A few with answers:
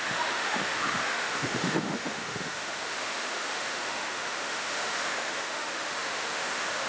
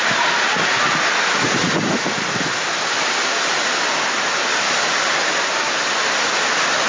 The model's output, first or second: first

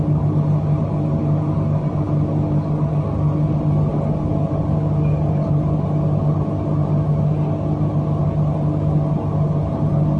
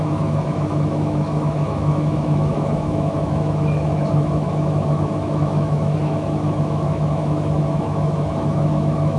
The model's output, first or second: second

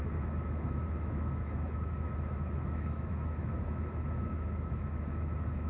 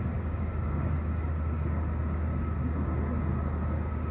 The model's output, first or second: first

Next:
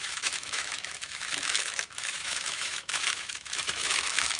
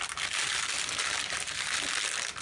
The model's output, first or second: first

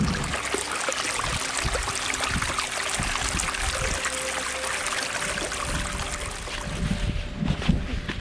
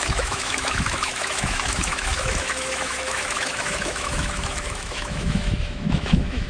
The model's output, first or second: second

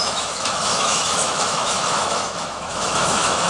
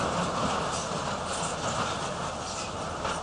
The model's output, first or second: first